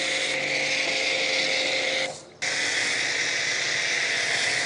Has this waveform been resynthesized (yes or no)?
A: no